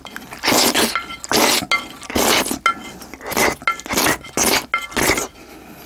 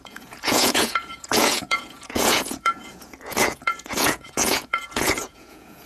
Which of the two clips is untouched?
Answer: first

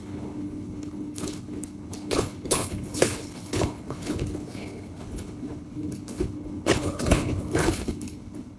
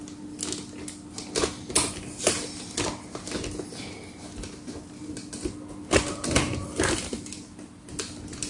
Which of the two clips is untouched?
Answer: second